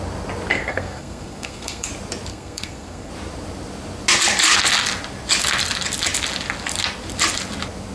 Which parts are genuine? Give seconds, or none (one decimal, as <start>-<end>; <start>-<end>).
0.0-0.5; 1.9-2.3; 3.1-7.9